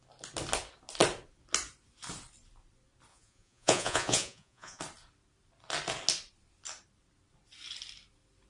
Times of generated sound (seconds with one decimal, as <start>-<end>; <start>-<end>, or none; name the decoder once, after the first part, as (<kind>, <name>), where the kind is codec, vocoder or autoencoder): 3.1-4.8 (vocoder, Vocos)